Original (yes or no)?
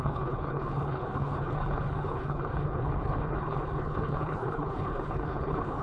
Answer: no